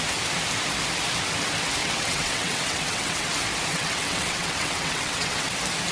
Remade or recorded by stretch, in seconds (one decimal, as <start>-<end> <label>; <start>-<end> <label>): 0.0-1.8 recorded; 1.8-3.3 remade; 3.3-3.7 recorded; 3.7-5.5 remade; 5.5-5.9 recorded